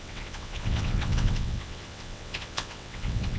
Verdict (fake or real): fake